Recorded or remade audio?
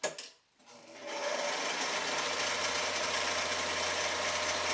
recorded